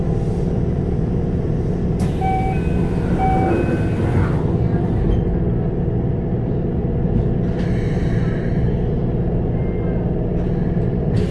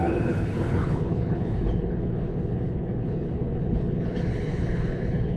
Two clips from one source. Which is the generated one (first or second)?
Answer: second